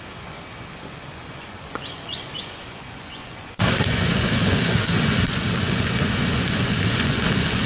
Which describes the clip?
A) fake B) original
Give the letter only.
A